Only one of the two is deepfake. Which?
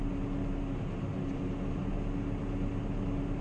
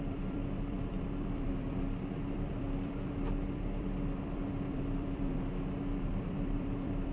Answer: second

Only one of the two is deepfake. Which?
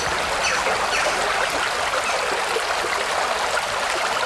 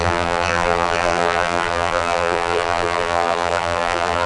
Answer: second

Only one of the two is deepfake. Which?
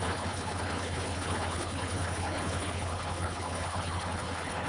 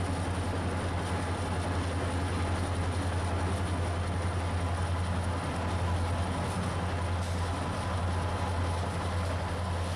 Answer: first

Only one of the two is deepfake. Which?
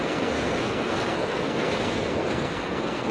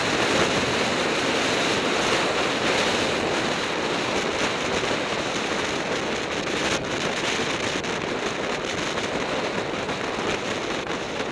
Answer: first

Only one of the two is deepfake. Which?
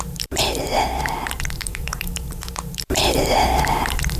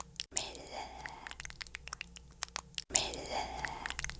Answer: first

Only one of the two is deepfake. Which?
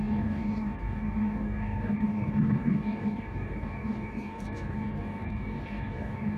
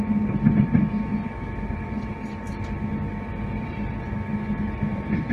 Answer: first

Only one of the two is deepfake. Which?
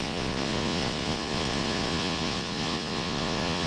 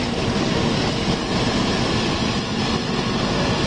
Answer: first